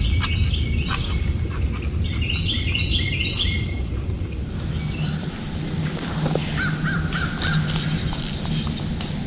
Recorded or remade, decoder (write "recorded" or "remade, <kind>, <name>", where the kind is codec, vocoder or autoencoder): recorded